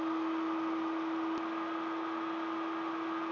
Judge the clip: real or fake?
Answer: real